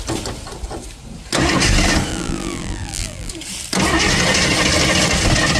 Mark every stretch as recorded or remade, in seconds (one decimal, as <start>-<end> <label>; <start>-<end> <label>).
0.0-2.1 recorded; 2.1-3.3 remade; 3.3-5.6 recorded

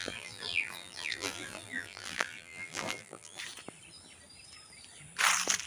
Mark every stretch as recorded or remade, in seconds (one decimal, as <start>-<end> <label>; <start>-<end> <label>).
0.0-3.4 remade; 3.4-5.7 recorded